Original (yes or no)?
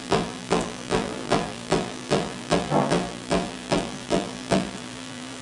no